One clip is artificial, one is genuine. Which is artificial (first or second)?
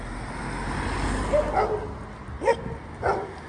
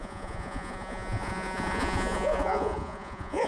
second